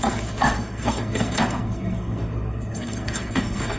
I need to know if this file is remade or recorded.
remade